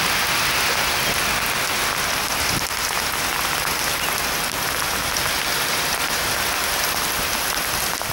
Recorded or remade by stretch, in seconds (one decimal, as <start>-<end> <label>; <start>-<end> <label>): 0.0-8.1 recorded